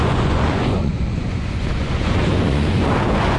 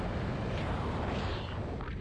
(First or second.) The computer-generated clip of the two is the first